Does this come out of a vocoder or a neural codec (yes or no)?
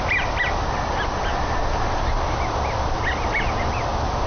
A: no